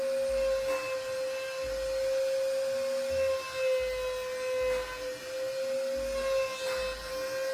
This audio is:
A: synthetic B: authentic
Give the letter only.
B